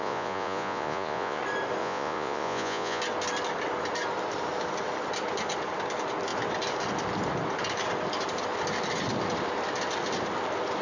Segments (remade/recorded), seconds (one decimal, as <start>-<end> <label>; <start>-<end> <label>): 0.0-1.4 remade; 1.4-1.8 recorded; 1.8-3.0 remade; 3.0-10.8 recorded